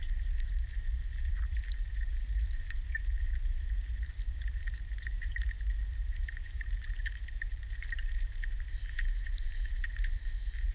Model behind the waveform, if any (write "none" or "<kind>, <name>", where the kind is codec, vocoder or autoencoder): vocoder, BigVGAN v2